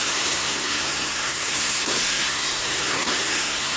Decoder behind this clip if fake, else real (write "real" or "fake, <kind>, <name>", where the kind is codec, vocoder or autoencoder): fake, codec, SNAC